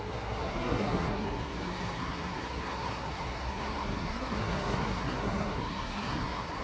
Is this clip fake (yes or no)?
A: yes